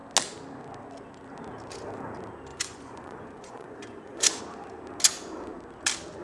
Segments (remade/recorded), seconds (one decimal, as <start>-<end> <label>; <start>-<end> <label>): 0.0-2.5 recorded; 2.5-4.4 remade; 4.4-6.2 recorded